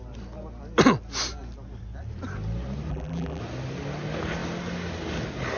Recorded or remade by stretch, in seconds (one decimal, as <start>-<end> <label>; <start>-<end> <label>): 0.0-2.9 recorded; 2.9-3.4 remade; 3.4-5.6 recorded